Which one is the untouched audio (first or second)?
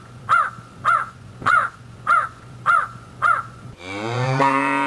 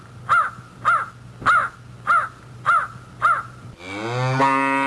second